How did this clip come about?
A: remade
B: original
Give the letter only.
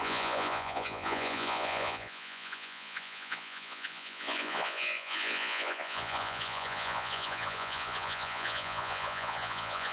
A